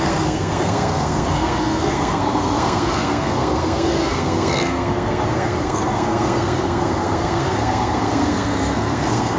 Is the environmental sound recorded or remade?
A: remade